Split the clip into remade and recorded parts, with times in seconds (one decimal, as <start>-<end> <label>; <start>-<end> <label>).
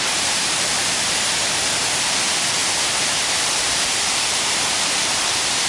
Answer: 0.0-1.4 remade; 1.4-2.2 recorded; 2.2-2.6 remade; 2.6-3.1 recorded; 3.1-5.7 remade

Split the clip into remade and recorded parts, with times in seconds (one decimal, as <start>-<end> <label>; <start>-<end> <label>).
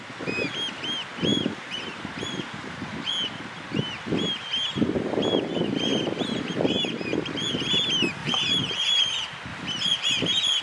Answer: 0.0-1.3 recorded; 1.3-3.1 remade; 3.1-8.2 recorded; 8.2-8.8 remade; 8.8-9.5 recorded; 9.5-10.1 remade; 10.1-10.6 recorded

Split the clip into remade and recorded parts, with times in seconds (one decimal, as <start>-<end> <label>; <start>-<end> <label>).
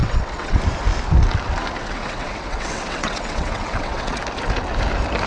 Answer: 0.0-0.6 remade; 0.6-1.8 recorded; 1.8-4.2 remade; 4.2-5.3 recorded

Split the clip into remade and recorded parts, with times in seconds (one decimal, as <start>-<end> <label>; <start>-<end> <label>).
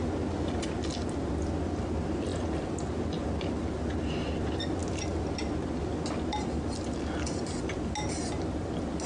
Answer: 0.0-9.1 recorded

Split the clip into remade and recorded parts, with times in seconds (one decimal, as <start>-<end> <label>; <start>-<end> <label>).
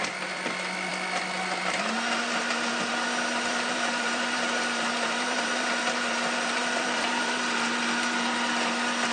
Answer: 0.0-3.5 recorded; 3.5-7.4 remade; 7.4-9.1 recorded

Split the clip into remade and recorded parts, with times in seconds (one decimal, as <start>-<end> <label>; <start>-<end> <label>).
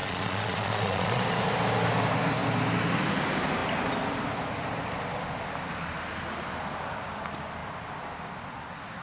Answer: 0.0-1.2 remade; 1.2-9.0 recorded